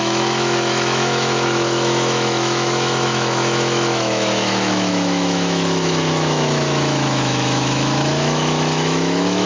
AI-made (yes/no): yes